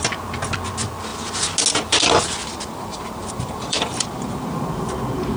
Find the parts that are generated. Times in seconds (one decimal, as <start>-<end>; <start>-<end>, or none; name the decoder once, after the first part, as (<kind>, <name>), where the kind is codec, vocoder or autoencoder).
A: 2.4-4.8 (vocoder, BigVGAN v2)